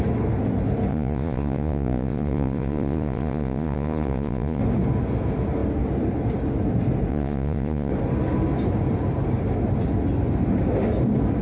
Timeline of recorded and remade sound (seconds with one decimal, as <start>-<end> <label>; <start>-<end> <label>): 0.0-0.9 recorded; 0.9-4.6 remade; 4.6-7.1 recorded; 7.1-7.9 remade; 7.9-11.4 recorded